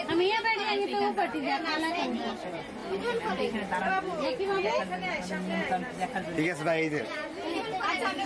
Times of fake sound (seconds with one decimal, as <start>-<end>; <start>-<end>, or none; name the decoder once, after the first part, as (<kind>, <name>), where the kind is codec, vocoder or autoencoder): none